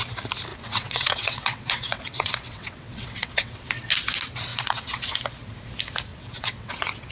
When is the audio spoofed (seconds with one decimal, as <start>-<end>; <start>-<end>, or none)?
0.5-3.7; 4.5-5.0; 6.1-7.1